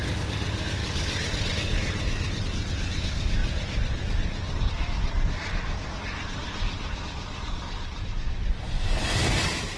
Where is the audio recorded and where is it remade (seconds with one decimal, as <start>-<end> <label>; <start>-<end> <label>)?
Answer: 0.0-6.4 recorded; 6.4-8.3 remade; 8.3-9.8 recorded